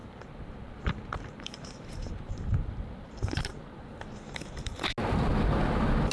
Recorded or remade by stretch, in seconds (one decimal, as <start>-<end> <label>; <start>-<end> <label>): 0.0-3.5 remade; 3.5-6.1 recorded